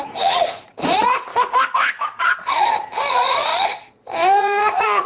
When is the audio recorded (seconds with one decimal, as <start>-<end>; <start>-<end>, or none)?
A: 1.3-3.1; 3.5-4.4